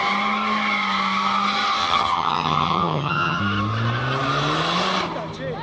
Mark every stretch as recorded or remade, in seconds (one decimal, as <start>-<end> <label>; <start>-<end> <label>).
0.0-1.8 recorded; 1.8-3.4 remade; 3.4-5.6 recorded